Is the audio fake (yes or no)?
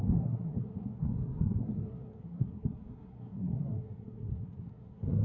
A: yes